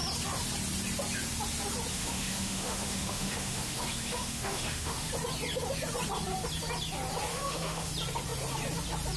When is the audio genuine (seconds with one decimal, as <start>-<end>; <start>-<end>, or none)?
0.0-1.9; 5.1-7.3; 7.9-9.2